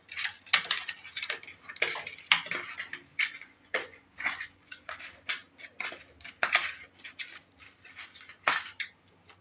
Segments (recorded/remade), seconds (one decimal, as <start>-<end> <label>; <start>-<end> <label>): 0.0-3.1 recorded; 3.1-4.9 remade; 4.9-9.4 recorded